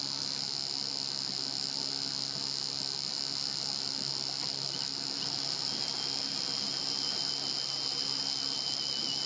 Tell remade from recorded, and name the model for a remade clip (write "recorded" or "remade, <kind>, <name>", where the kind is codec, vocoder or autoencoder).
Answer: recorded